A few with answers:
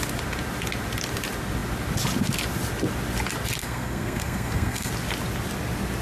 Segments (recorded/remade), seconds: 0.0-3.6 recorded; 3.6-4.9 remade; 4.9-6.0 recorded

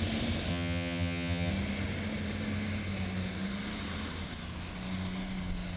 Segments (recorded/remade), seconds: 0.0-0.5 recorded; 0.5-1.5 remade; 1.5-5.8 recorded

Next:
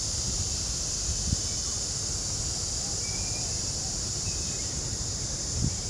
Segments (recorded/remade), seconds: 0.0-0.5 remade; 0.5-3.6 recorded; 3.6-5.9 remade

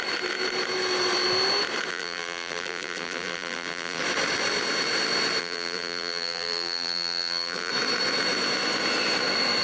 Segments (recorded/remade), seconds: 0.0-1.9 recorded; 1.9-4.0 remade; 4.0-5.4 recorded; 5.4-7.7 remade; 7.7-9.6 recorded

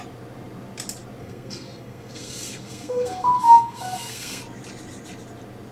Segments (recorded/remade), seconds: 0.0-1.2 recorded; 1.2-4.4 remade; 4.4-5.7 recorded